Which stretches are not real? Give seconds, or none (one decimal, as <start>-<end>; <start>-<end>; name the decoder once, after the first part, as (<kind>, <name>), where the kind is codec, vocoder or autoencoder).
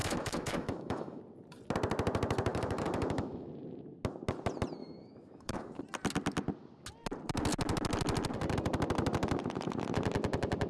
0.0-1.2 (autoencoder, DAC-VAE); 2.5-3.5; 4.8-5.8